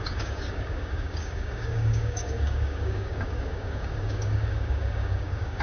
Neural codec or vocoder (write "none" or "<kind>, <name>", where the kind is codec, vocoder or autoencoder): codec, DAC